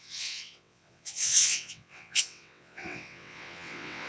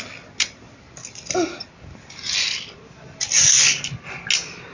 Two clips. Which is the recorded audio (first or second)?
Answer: second